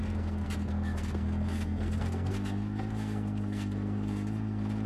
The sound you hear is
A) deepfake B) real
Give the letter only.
A